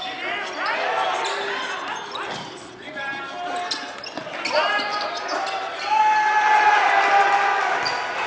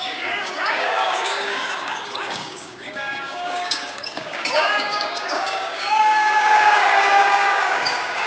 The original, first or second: first